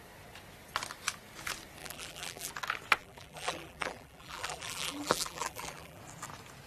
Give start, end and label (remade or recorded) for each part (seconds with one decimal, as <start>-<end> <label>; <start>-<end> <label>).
0.0-1.8 recorded; 1.8-2.5 remade; 2.5-3.0 recorded; 3.0-6.0 remade; 6.0-6.7 recorded